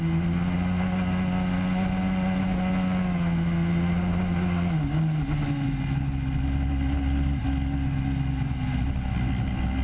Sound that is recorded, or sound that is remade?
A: recorded